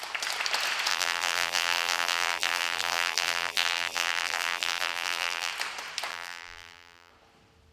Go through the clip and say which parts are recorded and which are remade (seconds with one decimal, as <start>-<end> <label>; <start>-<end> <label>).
0.0-0.9 recorded; 0.9-5.5 remade; 5.5-6.1 recorded; 6.1-7.1 remade; 7.1-7.7 recorded